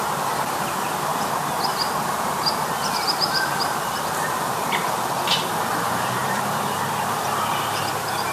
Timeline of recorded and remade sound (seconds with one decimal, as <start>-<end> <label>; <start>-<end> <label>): 0.0-1.1 remade; 1.1-3.0 recorded; 3.0-8.3 remade